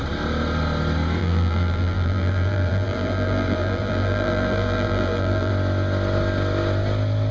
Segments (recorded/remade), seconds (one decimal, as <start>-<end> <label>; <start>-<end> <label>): 0.0-1.2 recorded; 1.2-5.5 remade; 5.5-7.3 recorded